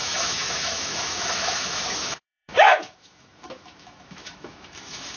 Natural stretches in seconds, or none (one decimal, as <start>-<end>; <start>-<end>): none

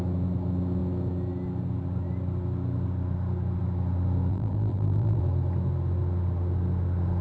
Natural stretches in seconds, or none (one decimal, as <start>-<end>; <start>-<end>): 0.0-4.3; 5.2-7.2

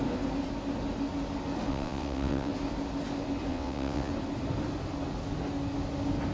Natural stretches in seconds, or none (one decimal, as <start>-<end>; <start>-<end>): 0.0-1.7; 2.5-3.5; 4.1-6.3

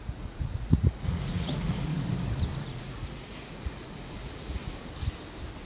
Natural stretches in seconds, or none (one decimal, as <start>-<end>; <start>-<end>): 1.9-2.6; 4.6-5.7

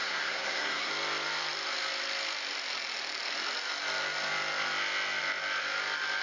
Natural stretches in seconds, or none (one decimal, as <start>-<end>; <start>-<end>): 0.9-6.2

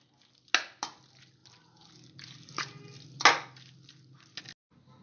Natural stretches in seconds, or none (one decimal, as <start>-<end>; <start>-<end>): 0.0-5.0

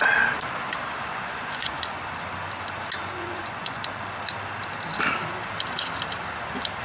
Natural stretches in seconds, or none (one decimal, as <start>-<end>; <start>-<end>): 0.0-1.1; 2.1-3.0; 3.8-6.8